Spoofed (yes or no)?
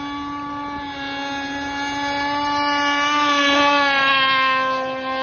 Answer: no